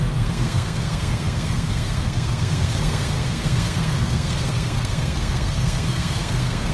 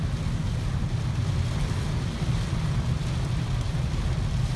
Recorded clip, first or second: second